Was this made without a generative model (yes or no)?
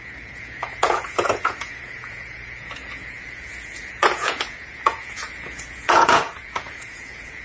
no